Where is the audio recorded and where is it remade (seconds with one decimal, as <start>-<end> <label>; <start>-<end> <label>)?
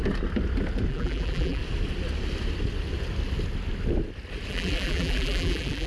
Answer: 0.0-0.9 recorded; 0.9-1.6 remade; 1.6-4.5 recorded; 4.5-5.9 remade